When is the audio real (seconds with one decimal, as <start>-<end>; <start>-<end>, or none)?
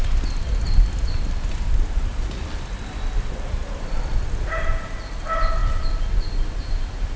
0.0-7.2